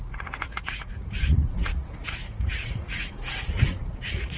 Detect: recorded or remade remade